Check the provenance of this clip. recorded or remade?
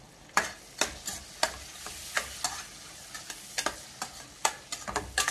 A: recorded